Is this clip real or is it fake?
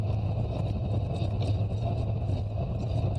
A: real